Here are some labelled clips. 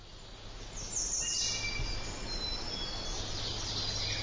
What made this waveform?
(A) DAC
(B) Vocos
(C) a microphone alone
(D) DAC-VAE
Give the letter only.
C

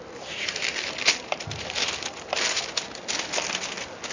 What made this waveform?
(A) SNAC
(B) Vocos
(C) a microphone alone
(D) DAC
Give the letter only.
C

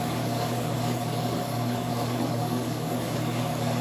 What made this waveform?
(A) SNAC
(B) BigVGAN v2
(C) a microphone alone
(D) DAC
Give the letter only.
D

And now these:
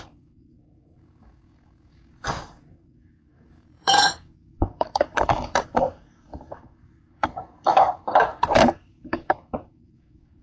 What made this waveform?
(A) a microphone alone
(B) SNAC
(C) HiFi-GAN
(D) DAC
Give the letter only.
D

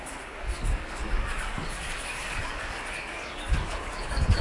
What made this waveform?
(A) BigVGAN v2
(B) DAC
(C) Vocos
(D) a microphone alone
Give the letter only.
B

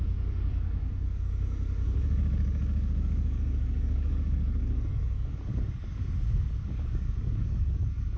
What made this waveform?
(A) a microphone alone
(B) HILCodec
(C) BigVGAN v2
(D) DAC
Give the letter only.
D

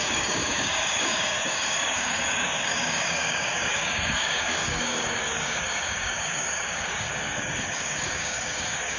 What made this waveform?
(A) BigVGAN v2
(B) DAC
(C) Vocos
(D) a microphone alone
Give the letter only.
B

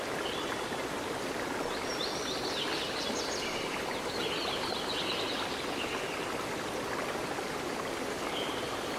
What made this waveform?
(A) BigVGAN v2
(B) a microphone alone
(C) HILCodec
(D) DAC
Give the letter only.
B